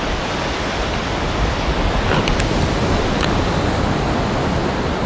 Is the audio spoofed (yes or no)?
no